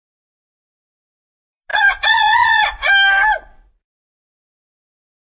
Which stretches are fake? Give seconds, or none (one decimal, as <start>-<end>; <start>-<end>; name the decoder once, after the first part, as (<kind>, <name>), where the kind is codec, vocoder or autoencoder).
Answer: 1.7-2.9 (vocoder, Vocos)

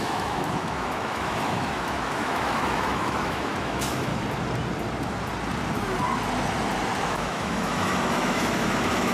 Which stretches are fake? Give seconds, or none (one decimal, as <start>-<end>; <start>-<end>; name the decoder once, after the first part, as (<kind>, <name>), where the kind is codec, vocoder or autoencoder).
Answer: 0.0-4.1 (autoencoder, DAC-VAE); 7.0-9.1

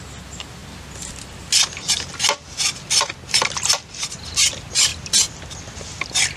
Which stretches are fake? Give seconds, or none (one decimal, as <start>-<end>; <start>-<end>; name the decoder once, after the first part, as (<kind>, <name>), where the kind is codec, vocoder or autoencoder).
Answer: none

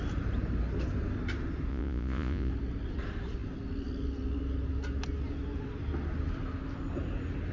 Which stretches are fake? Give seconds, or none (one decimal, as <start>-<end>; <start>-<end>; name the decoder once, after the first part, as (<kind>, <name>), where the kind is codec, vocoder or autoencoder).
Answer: 1.7-2.5 (vocoder, Vocos)

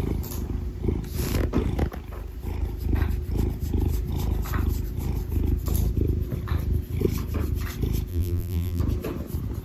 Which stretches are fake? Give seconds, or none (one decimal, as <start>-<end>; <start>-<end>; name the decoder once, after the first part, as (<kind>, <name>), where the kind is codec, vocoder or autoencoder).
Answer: 8.1-8.8 (vocoder, BigVGAN v2)